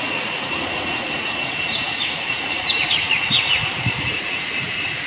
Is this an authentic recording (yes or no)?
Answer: no